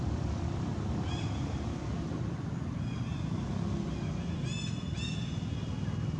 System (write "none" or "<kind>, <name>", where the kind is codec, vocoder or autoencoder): none